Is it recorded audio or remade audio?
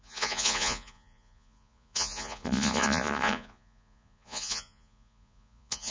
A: remade